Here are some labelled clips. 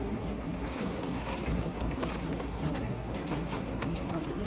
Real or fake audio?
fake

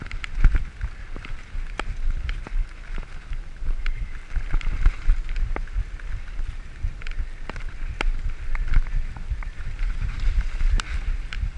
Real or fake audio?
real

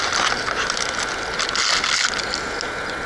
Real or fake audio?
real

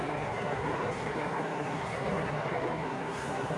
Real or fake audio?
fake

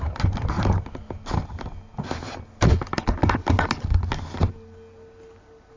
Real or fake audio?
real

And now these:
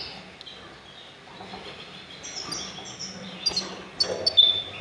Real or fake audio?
real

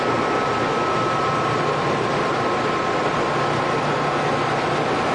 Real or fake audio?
real